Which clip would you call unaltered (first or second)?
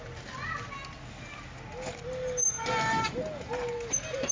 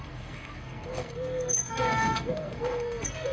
first